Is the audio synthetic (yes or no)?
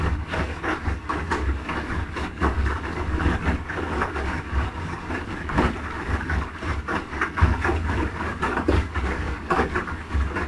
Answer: yes